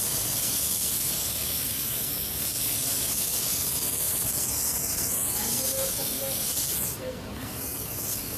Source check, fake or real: fake